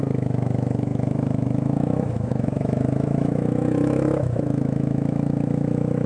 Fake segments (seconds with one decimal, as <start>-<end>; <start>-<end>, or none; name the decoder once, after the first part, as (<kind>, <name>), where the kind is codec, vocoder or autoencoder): 0.0-6.1 (autoencoder, DAC-VAE)